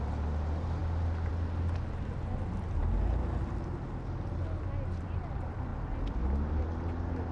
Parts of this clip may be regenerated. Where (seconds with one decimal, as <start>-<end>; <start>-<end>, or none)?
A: none